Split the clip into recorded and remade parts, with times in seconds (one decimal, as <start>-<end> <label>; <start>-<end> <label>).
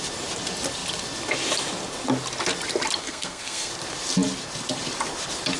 0.0-3.0 recorded; 3.0-3.7 remade; 3.7-5.6 recorded